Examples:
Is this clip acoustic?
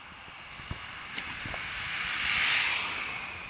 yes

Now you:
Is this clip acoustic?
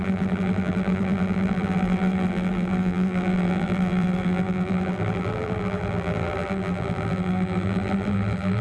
no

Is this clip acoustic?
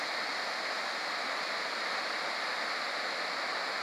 yes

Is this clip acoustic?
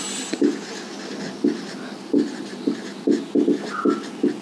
yes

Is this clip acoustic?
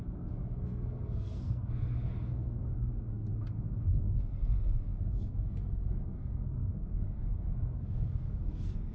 no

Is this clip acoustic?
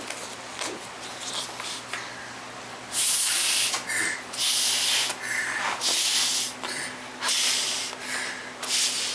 yes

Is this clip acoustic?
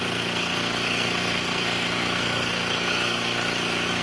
no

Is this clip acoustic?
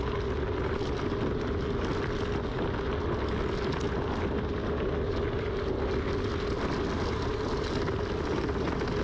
yes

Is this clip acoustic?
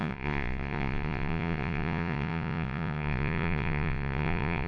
no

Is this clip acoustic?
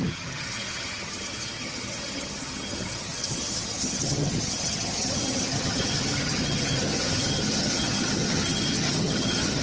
no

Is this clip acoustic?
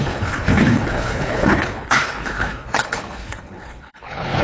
no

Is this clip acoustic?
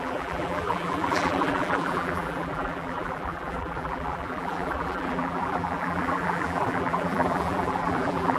no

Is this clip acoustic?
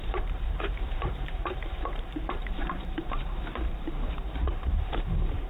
no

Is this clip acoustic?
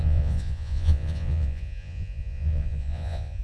no